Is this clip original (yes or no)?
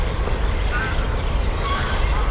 yes